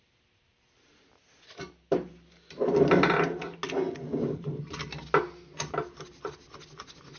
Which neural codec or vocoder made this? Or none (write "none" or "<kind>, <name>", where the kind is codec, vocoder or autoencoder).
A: none